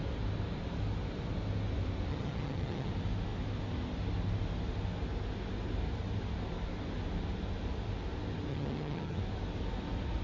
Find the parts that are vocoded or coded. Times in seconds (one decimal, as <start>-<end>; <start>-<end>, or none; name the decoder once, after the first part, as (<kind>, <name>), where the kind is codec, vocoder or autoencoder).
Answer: 2.1-2.9 (vocoder, HiFi-GAN); 8.5-9.2